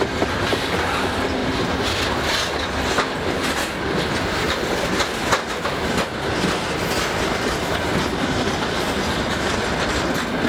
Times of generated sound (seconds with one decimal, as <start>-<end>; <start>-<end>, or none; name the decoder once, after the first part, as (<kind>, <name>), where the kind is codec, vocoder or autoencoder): none